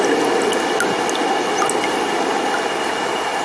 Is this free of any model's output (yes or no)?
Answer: yes